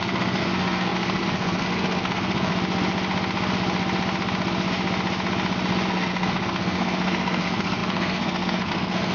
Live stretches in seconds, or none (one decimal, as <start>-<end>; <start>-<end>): 2.5-5.9